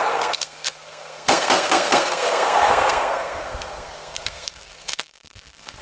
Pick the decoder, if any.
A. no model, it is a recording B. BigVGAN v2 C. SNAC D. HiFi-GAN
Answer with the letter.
C